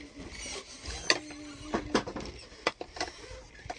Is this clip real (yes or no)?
yes